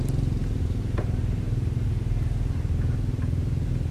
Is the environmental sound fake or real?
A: real